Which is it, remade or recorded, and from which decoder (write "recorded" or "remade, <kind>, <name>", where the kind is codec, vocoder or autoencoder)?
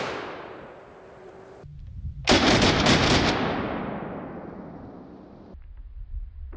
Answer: recorded